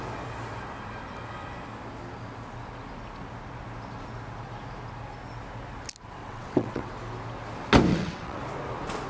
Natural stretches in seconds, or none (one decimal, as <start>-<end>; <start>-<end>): 0.0-6.2; 6.9-7.9; 8.4-9.1